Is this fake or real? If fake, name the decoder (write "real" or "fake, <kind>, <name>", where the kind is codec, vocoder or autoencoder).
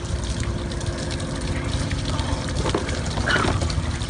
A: real